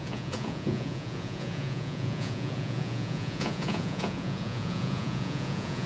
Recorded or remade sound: remade